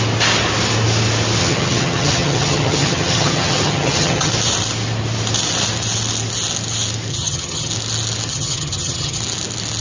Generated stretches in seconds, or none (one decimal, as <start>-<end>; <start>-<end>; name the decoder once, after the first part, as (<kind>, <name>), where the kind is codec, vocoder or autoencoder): 1.4-4.3 (vocoder, HiFi-GAN); 7.1-7.7; 8.3-9.2